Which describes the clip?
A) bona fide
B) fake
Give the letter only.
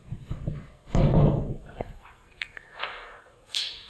B